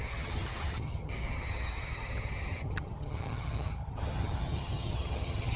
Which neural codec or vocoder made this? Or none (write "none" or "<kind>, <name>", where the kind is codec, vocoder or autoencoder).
vocoder, HiFi-GAN